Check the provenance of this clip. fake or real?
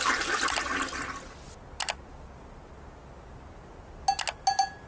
real